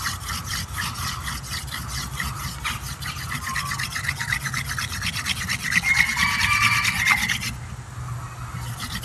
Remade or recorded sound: recorded